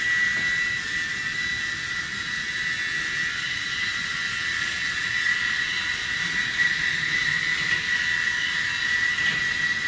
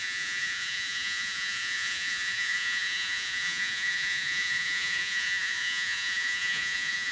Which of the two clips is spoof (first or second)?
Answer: second